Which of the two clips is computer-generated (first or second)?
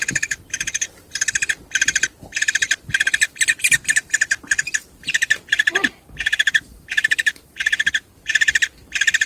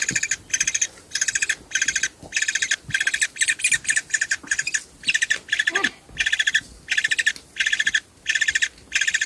first